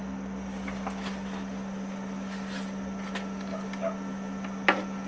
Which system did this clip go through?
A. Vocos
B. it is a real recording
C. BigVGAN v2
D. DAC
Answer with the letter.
B